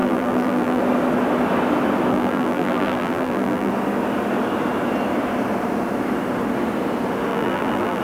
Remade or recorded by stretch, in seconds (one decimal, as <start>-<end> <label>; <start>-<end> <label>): 0.0-0.8 remade; 0.8-2.1 recorded; 2.1-3.7 remade; 3.7-7.3 recorded; 7.3-8.0 remade